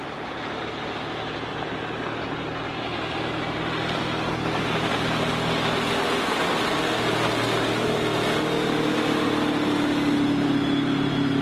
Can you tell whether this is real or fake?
real